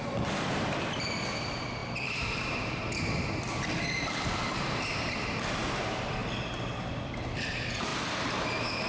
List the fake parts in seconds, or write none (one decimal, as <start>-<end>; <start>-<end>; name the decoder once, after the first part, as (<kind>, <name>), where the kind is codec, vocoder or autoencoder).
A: 0.0-6.2 (vocoder, BigVGAN v2); 6.8-8.9